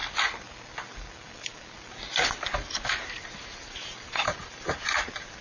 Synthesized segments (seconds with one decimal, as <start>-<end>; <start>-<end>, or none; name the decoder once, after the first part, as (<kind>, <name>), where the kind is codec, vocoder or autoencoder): 3.2-5.4 (vocoder, BigVGAN v2)